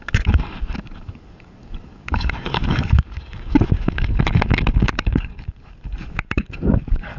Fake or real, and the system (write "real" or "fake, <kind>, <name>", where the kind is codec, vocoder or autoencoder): fake, codec, DAC